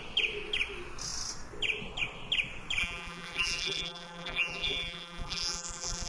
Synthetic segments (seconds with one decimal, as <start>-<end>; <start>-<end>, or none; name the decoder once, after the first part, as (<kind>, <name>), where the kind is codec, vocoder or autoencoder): 2.8-6.1 (vocoder, BigVGAN v2)